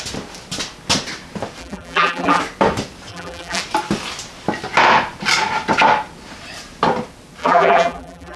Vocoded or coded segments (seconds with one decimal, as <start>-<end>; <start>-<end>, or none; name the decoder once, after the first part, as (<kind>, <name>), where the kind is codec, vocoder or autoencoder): 1.6-2.4 (vocoder, BigVGAN v2); 3.1-3.6; 7.4-8.4